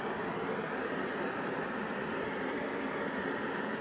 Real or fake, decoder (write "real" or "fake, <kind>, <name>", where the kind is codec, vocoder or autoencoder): fake, vocoder, BigVGAN v2